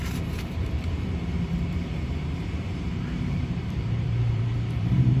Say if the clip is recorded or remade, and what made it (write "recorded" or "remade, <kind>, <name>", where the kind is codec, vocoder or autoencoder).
remade, vocoder, BigVGAN v2